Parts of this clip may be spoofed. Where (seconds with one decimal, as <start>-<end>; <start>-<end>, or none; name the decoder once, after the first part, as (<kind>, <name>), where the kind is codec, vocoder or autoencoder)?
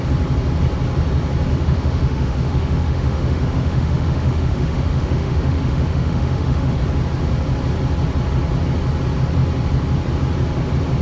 1.5-6.8 (autoencoder, DAC-VAE)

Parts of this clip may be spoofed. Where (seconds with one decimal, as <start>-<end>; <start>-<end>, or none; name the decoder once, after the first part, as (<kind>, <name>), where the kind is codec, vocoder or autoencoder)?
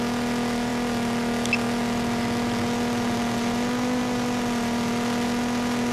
none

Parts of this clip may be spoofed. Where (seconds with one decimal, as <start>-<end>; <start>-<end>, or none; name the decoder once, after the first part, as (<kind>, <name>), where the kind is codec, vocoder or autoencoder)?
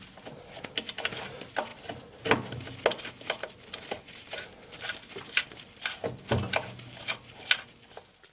none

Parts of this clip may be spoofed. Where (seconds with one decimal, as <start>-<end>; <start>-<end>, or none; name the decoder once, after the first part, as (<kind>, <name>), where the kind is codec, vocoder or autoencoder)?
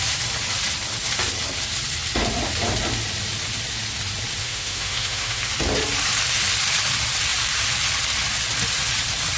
4.4-5.5 (autoencoder, DAC-VAE)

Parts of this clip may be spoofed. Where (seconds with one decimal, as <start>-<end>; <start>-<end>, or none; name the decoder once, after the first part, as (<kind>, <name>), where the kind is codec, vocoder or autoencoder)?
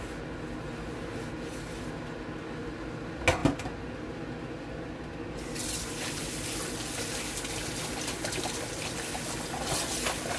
none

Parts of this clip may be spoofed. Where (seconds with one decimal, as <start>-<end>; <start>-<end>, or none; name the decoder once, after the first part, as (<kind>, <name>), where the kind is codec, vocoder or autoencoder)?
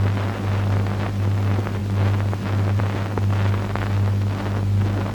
none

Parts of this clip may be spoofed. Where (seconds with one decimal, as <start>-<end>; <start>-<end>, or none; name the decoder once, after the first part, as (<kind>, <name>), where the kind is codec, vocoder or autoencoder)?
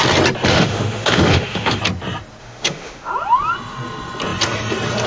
0.5-1.8 (autoencoder, DAC-VAE); 2.4-3.1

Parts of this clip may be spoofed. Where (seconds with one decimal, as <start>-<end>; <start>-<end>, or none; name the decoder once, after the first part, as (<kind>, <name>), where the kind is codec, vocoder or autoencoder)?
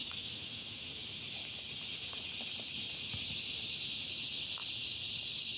0.0-0.9 (autoencoder, DAC-VAE)